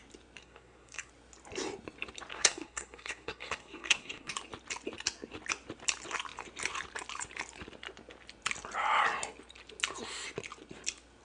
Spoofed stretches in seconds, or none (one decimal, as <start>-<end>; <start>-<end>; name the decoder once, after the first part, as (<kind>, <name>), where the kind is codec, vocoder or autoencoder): 0.4-1.1 (codec, SNAC); 2.3-4.3